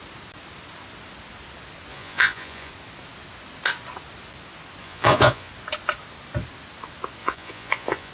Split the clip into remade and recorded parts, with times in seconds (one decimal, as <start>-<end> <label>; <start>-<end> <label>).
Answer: 0.0-1.9 recorded; 1.9-2.7 remade; 2.7-4.8 recorded; 4.8-5.5 remade; 5.5-7.2 recorded; 7.2-8.1 remade